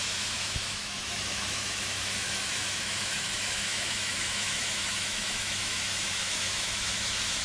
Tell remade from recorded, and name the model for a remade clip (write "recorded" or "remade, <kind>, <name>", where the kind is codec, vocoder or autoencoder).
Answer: remade, autoencoder, DAC-VAE